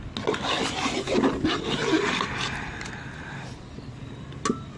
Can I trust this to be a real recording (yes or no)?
yes